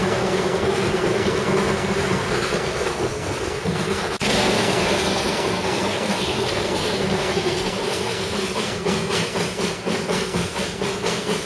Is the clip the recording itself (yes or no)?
no